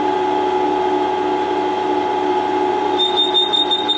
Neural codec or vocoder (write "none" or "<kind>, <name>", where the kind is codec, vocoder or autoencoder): none